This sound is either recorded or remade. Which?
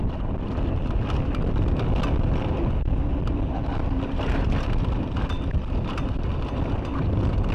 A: recorded